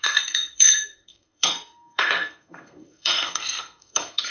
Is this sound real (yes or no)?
no